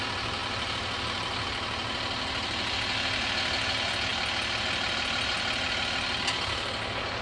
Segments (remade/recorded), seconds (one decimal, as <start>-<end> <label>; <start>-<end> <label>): 0.0-7.2 recorded